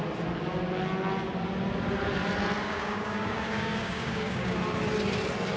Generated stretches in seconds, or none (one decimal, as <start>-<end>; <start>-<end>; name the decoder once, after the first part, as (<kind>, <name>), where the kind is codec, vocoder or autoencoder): 2.6-4.5 (codec, DAC)